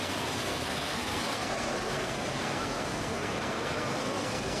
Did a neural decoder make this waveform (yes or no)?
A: yes